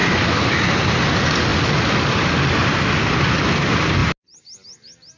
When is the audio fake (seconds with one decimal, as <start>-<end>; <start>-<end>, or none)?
none